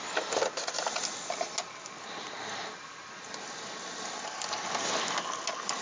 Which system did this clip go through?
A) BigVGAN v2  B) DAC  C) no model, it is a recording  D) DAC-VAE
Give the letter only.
C